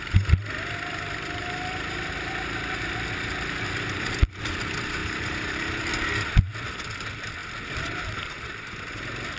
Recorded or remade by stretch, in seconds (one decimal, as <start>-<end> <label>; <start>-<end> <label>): 0.0-5.0 recorded; 5.0-5.9 remade; 5.9-9.4 recorded